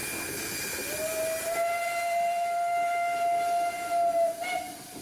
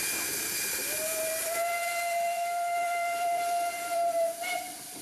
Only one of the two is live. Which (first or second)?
first